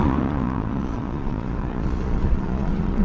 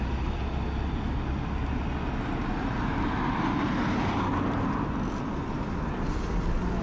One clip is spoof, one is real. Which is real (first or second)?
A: second